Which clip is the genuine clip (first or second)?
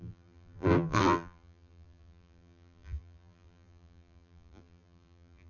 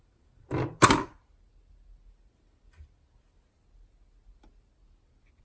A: second